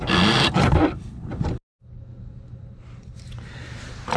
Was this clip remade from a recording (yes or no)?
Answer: no